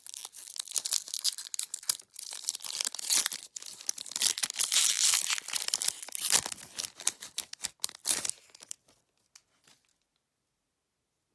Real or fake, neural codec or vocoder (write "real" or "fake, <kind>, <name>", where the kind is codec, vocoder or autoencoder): real